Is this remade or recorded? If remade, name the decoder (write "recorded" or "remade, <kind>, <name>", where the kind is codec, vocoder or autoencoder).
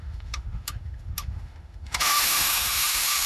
remade, autoencoder, DAC-VAE